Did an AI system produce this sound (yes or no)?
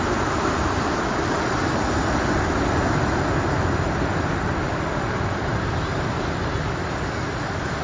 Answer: no